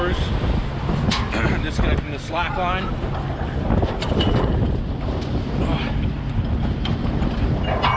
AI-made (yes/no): no